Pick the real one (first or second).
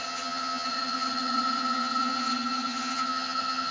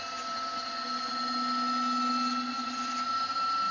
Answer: second